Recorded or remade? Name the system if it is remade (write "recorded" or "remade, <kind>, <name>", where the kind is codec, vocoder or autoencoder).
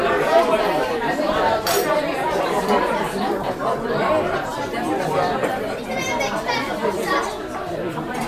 remade, vocoder, BigVGAN v2